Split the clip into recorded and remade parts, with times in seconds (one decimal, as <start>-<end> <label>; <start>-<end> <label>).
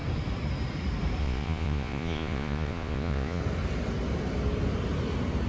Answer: 0.0-1.2 recorded; 1.2-3.4 remade; 3.4-5.5 recorded